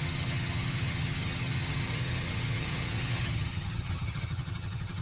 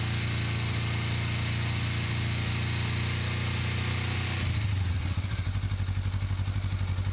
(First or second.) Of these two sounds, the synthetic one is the first